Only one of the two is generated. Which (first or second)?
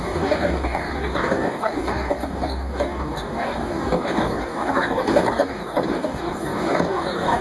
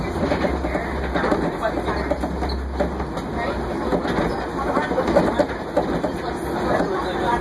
first